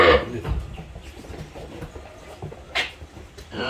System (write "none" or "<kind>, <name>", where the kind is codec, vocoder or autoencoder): none